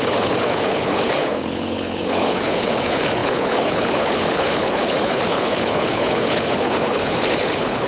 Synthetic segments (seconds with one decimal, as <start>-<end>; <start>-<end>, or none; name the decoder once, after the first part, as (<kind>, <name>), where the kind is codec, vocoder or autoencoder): 0.0-7.9 (codec, HILCodec)